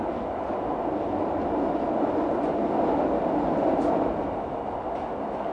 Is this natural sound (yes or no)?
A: yes